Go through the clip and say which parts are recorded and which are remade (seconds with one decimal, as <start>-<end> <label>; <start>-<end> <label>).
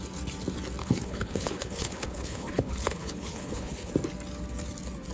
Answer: 0.0-0.8 recorded; 0.8-3.9 remade; 3.9-5.1 recorded